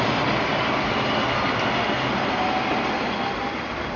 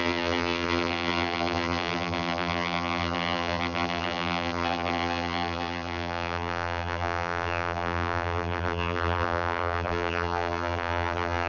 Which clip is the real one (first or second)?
first